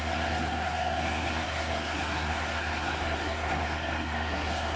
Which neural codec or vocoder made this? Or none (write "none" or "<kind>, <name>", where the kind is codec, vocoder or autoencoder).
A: codec, SNAC